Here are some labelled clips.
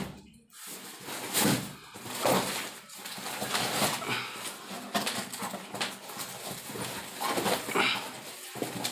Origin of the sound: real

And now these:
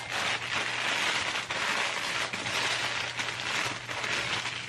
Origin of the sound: real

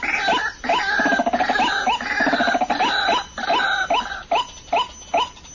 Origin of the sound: real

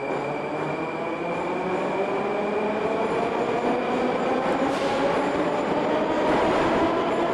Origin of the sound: real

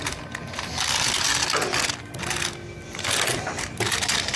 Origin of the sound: real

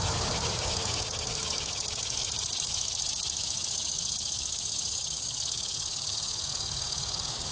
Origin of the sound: fake